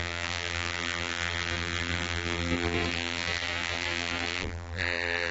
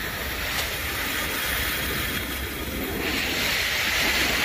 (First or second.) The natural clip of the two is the second